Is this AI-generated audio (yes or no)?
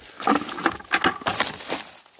no